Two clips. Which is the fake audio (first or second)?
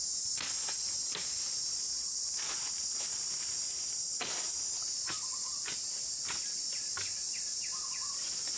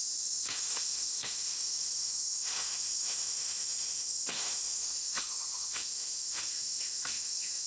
second